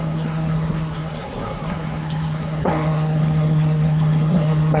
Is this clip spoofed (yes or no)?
yes